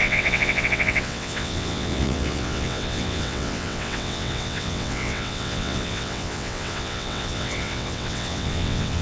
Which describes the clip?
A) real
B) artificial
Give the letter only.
B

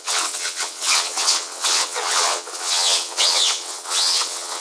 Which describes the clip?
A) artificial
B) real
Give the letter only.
A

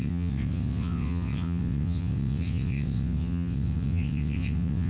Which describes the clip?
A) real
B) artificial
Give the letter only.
B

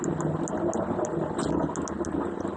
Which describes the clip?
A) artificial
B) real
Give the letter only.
B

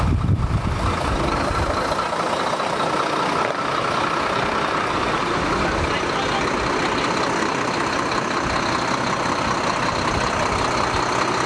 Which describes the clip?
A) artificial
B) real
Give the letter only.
B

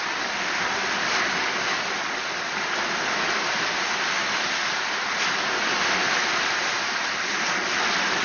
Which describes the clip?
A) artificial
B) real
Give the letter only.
B